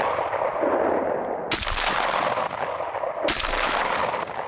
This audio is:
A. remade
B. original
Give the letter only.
B